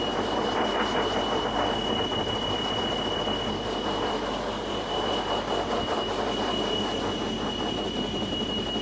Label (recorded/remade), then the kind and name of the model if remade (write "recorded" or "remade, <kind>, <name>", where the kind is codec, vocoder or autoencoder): recorded